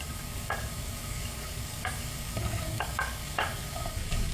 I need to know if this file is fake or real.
fake